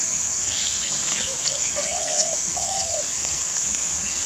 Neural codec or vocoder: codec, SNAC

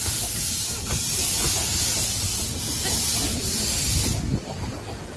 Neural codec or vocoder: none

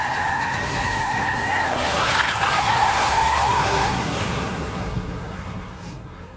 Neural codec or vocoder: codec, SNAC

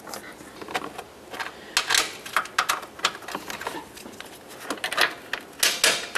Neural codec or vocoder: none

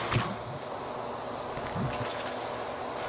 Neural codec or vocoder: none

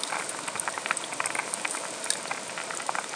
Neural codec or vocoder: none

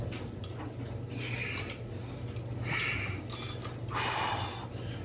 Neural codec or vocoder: none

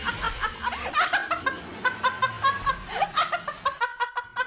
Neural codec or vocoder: none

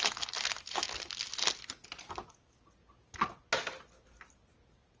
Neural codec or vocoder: none